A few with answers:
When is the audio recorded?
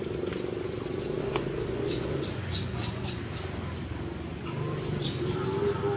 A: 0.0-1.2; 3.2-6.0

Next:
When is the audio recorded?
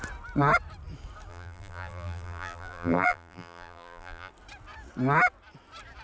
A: 0.0-1.3; 4.3-6.0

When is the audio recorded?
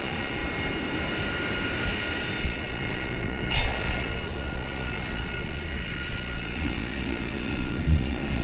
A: 0.4-2.4